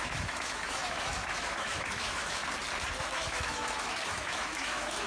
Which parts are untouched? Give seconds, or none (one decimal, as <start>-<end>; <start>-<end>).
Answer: 2.4-3.0